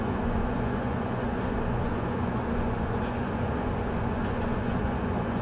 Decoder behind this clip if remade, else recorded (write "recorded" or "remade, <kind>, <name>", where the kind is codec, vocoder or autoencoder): remade, vocoder, Vocos